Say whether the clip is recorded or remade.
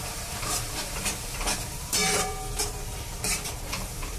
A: remade